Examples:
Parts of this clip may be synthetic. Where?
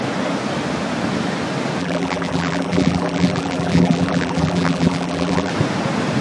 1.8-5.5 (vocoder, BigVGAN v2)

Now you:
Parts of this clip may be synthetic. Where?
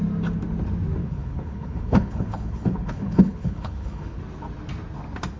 1.0-4.2 (codec, HILCodec)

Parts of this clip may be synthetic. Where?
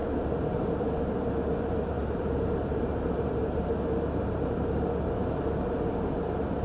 0.0-0.7 (vocoder, BigVGAN v2); 2.0-3.7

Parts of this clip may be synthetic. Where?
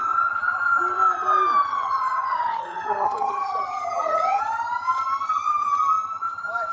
1.7-4.4 (vocoder, HiFi-GAN)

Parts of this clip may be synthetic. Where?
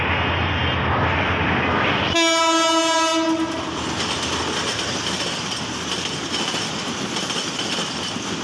none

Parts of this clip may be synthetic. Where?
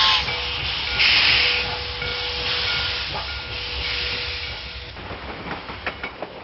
none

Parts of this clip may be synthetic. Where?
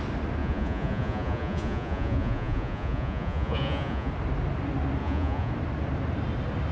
0.4-4.1 (vocoder, Vocos); 5.0-5.5